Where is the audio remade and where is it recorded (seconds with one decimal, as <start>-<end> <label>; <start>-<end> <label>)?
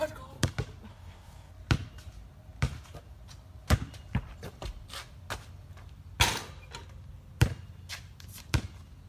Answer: 0.0-0.9 recorded; 0.9-1.5 remade; 1.5-9.1 recorded